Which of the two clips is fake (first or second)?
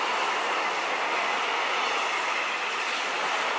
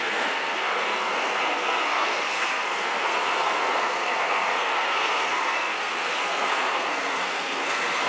second